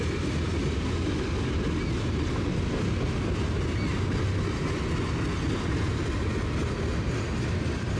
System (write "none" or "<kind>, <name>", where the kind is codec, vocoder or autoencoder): none